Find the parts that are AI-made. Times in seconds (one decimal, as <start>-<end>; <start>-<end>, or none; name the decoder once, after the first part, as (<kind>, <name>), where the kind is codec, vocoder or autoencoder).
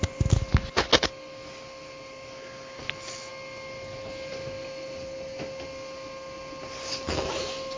none